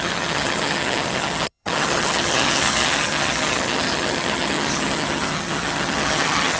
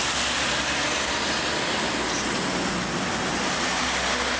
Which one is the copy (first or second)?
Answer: first